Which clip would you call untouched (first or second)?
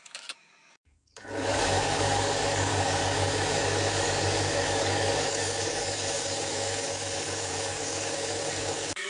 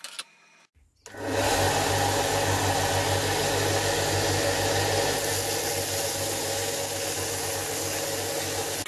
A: second